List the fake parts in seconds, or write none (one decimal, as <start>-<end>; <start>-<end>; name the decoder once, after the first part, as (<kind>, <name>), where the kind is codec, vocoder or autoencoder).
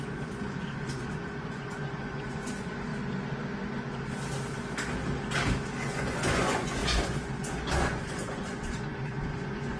0.0-2.9 (vocoder, Vocos); 5.8-9.8